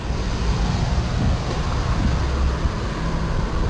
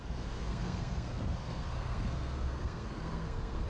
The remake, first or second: second